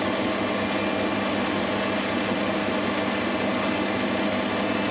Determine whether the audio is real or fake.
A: real